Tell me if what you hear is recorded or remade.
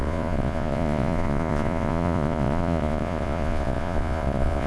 remade